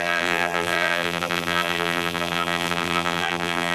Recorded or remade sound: remade